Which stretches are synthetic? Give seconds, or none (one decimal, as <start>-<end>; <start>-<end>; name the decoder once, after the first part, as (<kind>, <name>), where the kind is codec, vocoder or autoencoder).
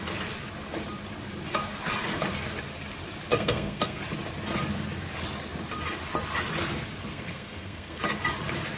3.3-4.0 (codec, SNAC); 7.1-8.0